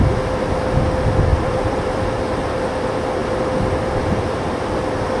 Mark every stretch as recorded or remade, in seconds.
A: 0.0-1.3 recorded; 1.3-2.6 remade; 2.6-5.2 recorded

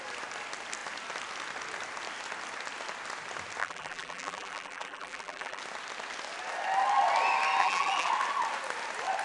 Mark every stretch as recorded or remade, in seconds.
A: 0.0-3.6 recorded; 3.6-5.6 remade; 5.6-7.6 recorded; 7.6-8.1 remade; 8.1-9.2 recorded

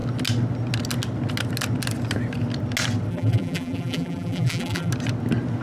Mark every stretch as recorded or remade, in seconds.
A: 0.0-3.1 recorded; 3.1-4.9 remade; 4.9-5.6 recorded

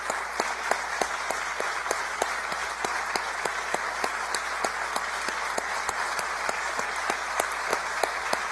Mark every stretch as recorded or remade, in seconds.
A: 0.0-8.5 recorded

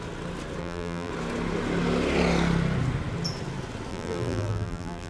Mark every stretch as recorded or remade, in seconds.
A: 0.0-0.6 recorded; 0.6-1.1 remade; 1.1-3.9 recorded; 3.9-5.1 remade

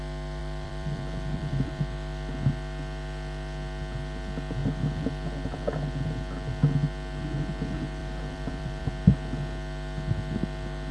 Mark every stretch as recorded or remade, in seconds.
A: 0.0-0.4 recorded; 0.4-2.3 remade; 2.3-4.6 recorded; 4.6-6.5 remade; 6.5-8.0 recorded; 8.0-8.8 remade; 8.8-10.9 recorded

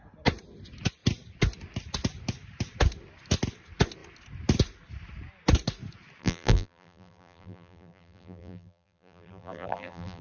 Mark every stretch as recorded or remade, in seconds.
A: 0.0-6.2 recorded; 6.2-10.2 remade

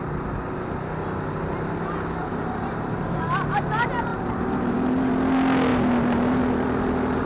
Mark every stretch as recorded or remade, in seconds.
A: 0.0-2.2 recorded; 2.2-3.2 remade; 3.2-4.1 recorded; 4.1-5.1 remade; 5.1-5.7 recorded; 5.7-6.4 remade; 6.4-7.3 recorded